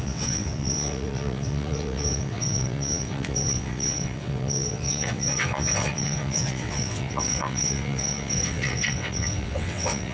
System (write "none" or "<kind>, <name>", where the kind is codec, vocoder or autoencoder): vocoder, WaveNeXt